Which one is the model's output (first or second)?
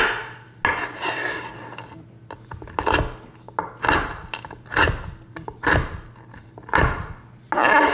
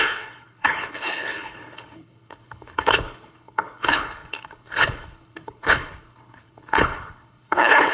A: second